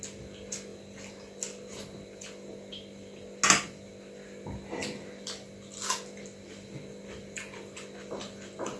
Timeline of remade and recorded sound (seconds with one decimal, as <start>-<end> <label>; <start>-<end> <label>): 0.0-8.8 recorded